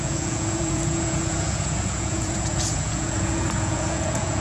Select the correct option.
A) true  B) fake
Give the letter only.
B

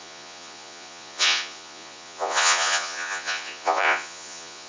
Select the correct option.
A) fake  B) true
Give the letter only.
A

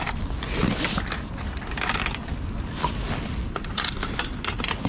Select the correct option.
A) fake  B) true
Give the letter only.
B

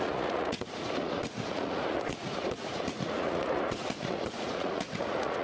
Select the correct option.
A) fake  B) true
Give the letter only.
A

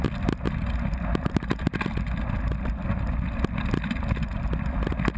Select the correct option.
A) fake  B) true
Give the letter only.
B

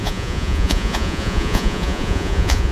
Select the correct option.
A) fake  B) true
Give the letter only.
A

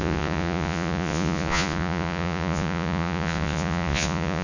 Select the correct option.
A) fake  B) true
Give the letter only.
A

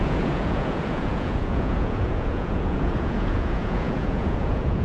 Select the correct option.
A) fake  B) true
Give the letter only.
A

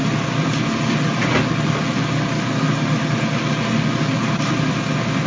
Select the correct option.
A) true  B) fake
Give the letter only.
A